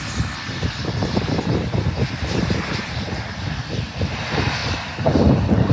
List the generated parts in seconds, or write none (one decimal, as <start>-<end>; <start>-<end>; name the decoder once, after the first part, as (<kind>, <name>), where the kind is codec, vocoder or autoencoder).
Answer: 0.8-3.7 (vocoder, BigVGAN v2)